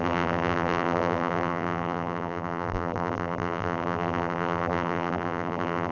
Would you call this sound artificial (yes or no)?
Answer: yes